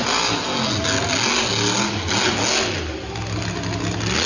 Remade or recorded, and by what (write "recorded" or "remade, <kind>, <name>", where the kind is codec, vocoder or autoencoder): recorded